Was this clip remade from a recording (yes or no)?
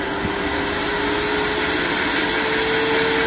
no